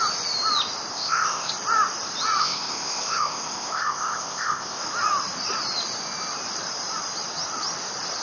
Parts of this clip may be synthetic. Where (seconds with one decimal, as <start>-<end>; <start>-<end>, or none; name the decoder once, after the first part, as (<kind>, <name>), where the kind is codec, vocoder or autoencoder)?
0.9-1.5 (codec, ZipCodec); 2.4-4.8